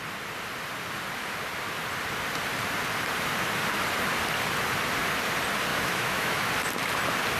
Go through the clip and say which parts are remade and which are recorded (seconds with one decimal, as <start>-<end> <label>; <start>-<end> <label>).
0.0-5.7 recorded; 5.7-6.5 remade; 6.5-7.4 recorded